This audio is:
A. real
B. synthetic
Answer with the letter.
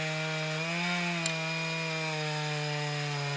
A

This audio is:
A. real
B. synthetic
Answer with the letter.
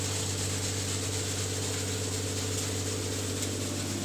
A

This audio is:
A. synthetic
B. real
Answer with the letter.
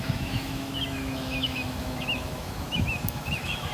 A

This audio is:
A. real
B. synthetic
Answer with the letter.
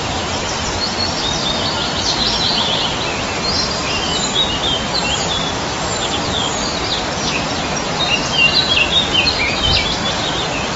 A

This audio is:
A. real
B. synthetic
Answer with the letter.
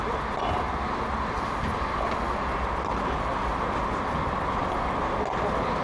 A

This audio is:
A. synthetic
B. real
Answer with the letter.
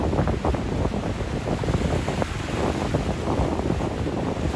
B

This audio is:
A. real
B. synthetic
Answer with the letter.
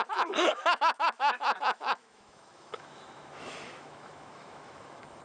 B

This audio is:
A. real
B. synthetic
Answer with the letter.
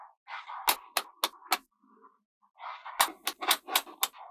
A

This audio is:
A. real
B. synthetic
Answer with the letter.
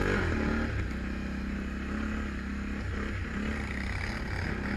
A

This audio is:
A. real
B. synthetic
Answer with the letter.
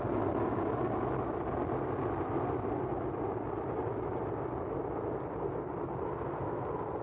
A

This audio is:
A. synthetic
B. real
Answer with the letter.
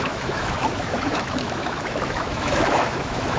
A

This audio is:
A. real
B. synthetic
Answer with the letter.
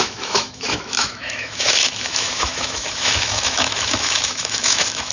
B